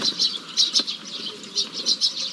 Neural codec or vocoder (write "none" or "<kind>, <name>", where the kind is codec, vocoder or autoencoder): none